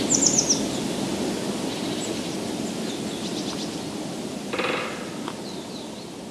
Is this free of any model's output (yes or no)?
yes